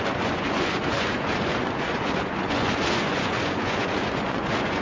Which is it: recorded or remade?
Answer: remade